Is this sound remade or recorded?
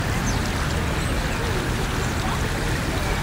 recorded